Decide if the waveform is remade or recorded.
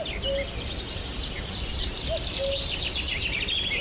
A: recorded